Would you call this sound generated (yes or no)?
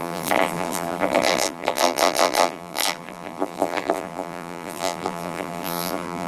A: yes